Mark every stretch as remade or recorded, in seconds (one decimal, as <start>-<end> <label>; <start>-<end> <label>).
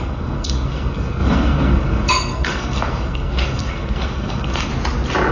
0.0-4.7 remade; 4.7-5.3 recorded